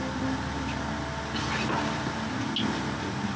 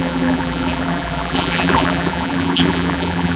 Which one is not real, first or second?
second